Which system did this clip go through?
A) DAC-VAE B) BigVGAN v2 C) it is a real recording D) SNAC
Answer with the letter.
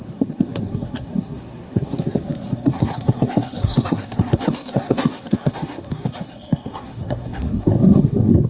D